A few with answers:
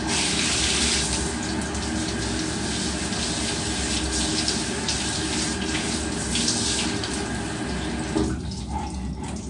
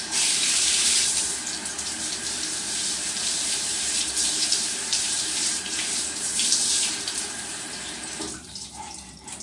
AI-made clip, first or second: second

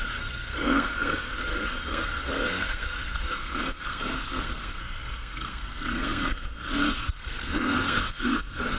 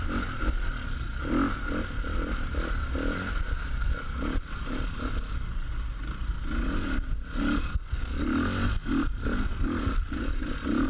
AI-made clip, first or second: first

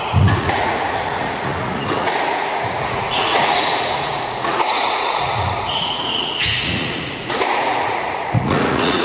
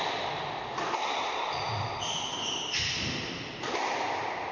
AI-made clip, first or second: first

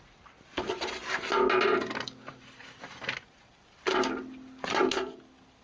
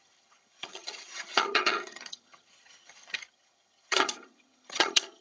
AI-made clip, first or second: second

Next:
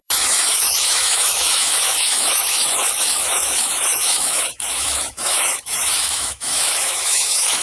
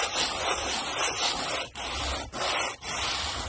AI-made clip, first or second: first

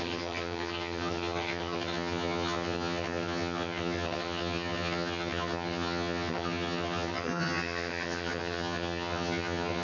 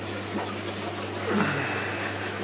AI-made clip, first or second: first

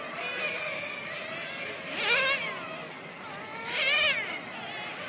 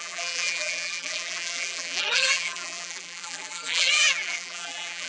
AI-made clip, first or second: second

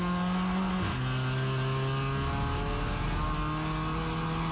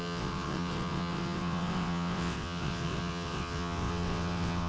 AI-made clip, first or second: second